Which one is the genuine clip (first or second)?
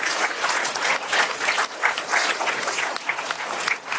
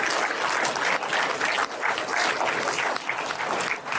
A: second